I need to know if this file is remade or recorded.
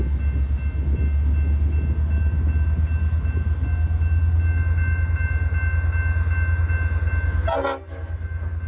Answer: recorded